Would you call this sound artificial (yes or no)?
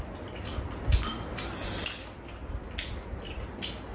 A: no